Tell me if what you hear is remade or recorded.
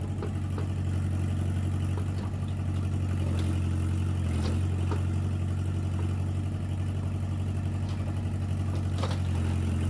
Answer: recorded